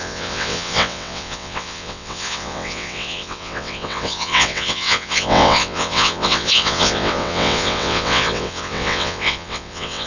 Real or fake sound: fake